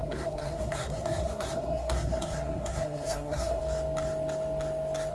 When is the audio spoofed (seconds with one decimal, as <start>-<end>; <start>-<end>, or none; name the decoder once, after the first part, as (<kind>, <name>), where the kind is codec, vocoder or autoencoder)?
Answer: 0.0-3.6 (codec, SNAC)